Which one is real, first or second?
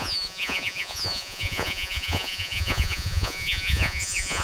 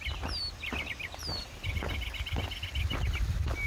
second